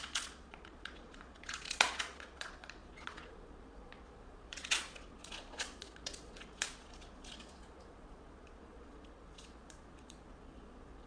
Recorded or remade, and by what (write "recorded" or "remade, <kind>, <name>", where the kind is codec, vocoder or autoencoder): remade, vocoder, Vocos